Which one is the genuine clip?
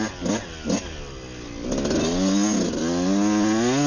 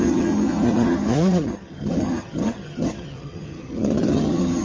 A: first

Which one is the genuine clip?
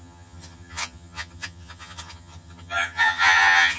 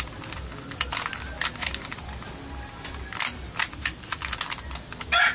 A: second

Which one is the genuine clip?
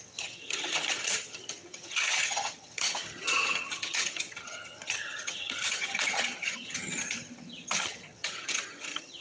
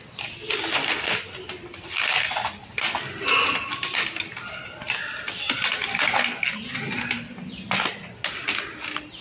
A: second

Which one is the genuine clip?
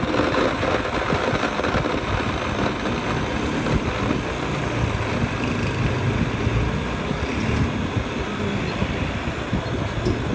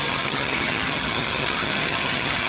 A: first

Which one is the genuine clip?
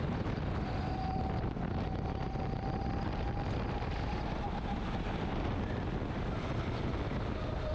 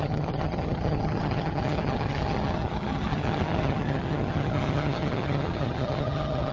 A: first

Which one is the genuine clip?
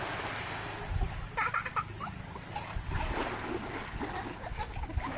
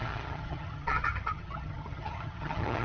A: first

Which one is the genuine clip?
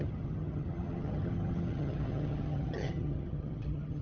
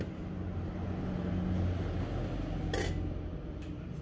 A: second